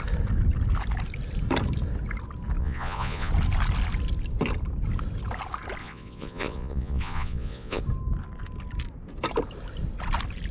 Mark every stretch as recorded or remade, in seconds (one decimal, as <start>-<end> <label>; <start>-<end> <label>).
0.0-2.6 recorded; 2.6-3.3 remade; 3.3-5.8 recorded; 5.8-7.8 remade; 7.8-10.5 recorded